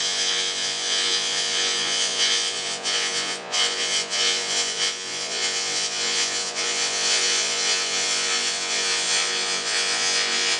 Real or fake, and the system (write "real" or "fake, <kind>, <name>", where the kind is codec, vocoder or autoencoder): fake, vocoder, Vocos